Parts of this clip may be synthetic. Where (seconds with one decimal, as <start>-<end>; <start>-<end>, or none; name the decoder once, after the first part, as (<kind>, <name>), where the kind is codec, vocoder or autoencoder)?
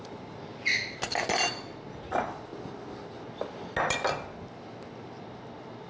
none